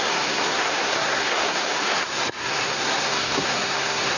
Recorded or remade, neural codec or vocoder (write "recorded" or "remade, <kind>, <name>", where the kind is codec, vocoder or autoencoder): remade, codec, SNAC